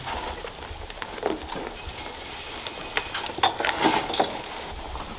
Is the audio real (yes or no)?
yes